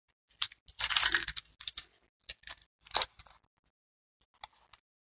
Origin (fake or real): real